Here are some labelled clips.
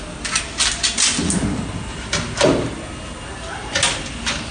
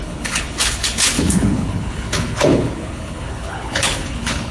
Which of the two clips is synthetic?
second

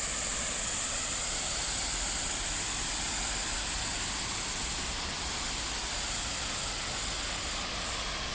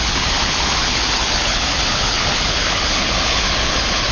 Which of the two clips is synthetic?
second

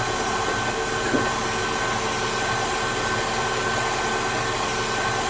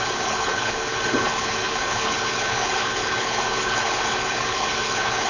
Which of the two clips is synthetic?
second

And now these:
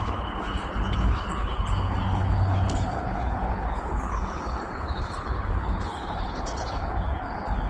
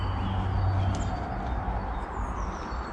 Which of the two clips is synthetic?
first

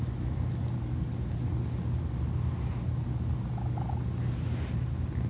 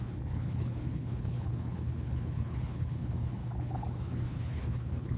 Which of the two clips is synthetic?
second